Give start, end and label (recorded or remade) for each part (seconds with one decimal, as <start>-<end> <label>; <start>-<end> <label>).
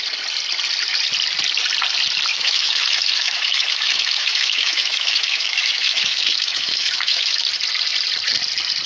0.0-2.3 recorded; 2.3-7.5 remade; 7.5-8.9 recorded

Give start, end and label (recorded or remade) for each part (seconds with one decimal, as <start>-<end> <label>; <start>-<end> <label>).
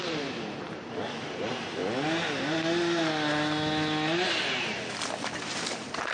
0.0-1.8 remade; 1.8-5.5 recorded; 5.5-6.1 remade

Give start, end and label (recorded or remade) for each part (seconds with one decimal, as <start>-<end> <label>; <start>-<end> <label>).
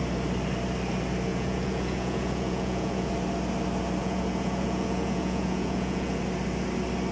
0.0-1.3 recorded; 1.3-3.1 remade; 3.1-4.0 recorded; 4.0-6.2 remade; 6.2-7.1 recorded